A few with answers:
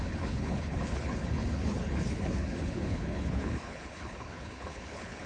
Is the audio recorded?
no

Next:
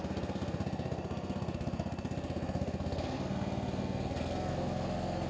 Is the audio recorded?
no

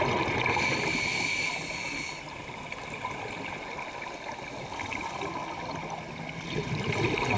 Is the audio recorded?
yes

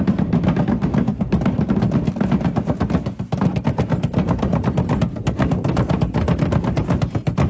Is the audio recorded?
yes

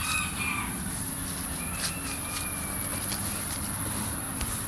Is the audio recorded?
yes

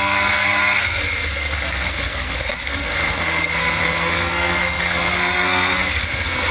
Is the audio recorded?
no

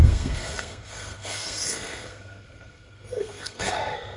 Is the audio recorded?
no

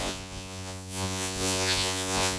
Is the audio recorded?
no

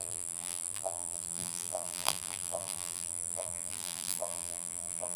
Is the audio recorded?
no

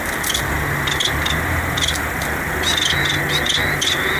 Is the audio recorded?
yes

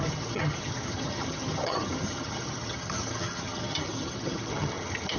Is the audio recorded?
no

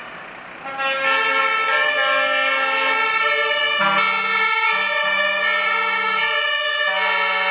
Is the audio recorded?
yes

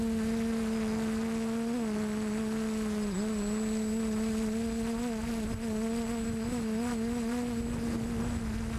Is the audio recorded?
yes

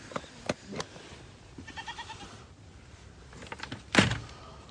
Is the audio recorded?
yes